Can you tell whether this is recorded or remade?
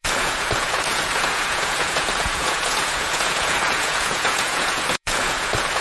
remade